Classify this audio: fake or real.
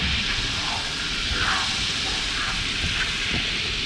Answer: real